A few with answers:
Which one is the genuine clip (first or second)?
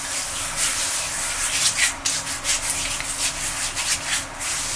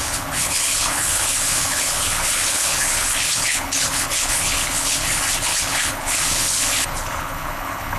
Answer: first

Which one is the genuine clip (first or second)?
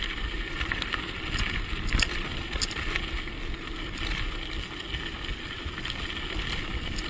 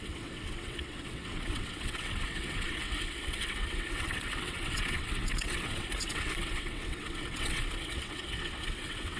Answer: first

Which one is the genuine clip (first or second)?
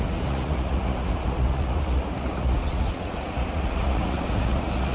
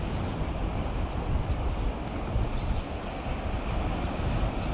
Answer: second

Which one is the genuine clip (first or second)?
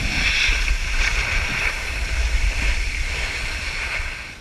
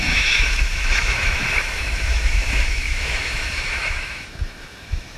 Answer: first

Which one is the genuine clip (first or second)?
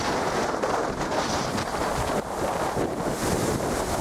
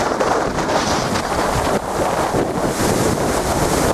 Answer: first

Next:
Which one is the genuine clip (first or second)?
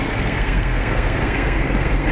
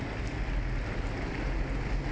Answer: second